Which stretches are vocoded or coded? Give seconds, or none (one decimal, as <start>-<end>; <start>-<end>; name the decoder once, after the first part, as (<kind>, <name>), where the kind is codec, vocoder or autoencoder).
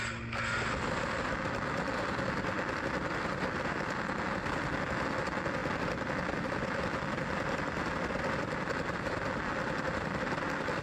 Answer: none